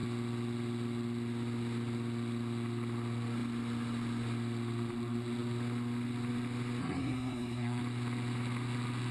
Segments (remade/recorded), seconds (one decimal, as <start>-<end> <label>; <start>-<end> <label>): 0.0-6.8 recorded; 6.8-7.8 remade; 7.8-9.1 recorded